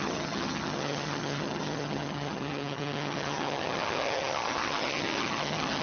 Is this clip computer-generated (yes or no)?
yes